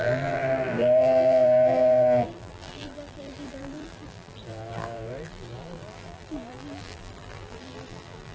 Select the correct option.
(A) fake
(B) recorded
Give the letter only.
A